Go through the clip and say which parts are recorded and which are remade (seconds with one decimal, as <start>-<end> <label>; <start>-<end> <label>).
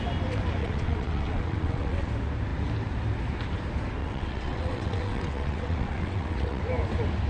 0.0-0.6 recorded; 0.6-2.1 remade; 2.1-4.0 recorded; 4.0-6.6 remade; 6.6-7.3 recorded